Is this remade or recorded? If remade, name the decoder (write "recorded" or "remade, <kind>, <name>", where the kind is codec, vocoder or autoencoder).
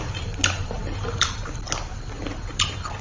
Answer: remade, vocoder, BigVGAN v2